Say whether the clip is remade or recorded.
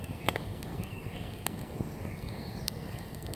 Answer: remade